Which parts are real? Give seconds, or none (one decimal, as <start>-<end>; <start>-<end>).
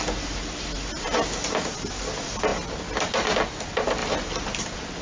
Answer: 0.0-5.0